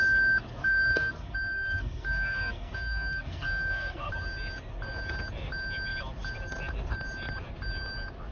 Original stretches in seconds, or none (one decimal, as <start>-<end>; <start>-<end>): 0.0-0.6; 4.1-8.3